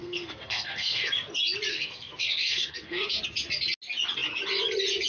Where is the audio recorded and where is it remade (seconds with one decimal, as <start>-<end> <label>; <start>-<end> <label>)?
0.0-1.1 remade; 1.1-1.7 recorded; 1.7-3.2 remade; 3.2-5.1 recorded